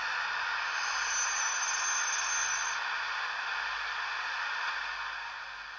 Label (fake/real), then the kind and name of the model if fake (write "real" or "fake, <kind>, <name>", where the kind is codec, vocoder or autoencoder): real